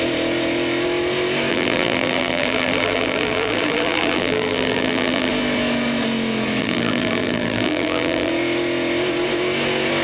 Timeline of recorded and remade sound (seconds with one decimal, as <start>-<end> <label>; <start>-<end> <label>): 0.0-1.5 recorded; 1.5-5.3 remade; 5.3-6.6 recorded; 6.6-8.3 remade; 8.3-10.0 recorded